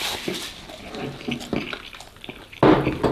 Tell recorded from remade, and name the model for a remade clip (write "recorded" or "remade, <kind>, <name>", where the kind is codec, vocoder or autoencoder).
recorded